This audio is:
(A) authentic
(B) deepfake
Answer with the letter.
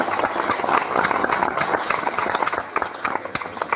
B